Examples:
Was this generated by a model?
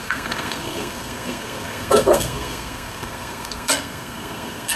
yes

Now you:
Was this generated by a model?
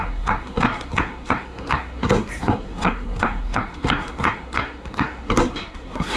yes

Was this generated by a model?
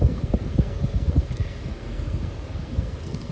yes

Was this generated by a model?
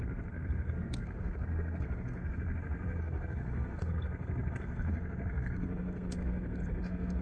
yes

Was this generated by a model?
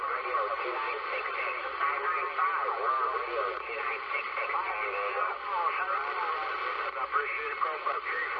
no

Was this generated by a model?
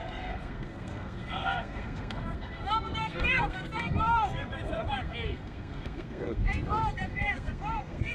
yes